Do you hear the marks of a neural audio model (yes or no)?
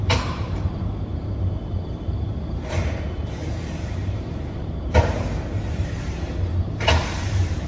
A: yes